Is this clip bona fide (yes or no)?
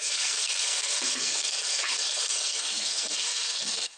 no